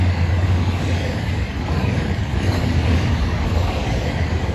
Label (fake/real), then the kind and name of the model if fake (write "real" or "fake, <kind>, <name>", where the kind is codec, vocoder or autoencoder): fake, codec, DAC